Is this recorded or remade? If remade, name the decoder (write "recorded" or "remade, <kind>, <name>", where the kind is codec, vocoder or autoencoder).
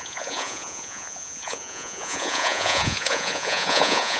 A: remade, vocoder, Vocos